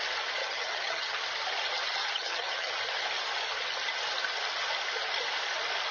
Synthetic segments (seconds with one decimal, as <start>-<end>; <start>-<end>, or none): 0.4-1.2; 2.0-2.7

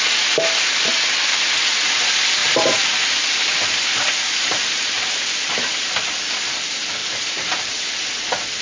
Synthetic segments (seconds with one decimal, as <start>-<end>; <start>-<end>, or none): 2.4-5.9; 7.0-7.9